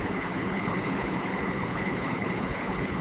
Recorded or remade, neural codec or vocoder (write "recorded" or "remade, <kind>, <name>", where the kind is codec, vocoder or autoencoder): remade, codec, HILCodec